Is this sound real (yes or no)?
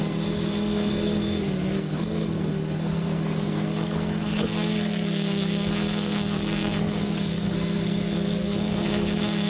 no